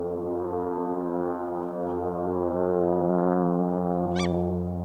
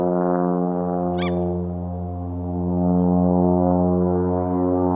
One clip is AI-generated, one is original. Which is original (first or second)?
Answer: second